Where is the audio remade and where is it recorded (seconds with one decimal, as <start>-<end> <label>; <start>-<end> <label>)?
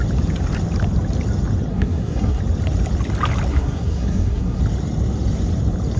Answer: 0.0-1.7 recorded; 1.7-2.4 remade; 2.4-3.5 recorded; 3.5-4.6 remade; 4.6-6.0 recorded